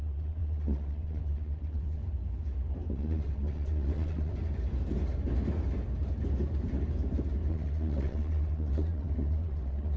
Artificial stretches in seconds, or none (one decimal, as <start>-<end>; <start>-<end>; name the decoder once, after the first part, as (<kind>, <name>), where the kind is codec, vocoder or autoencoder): 0.0-2.0 (vocoder, WaveNeXt); 2.9-4.3; 7.5-10.0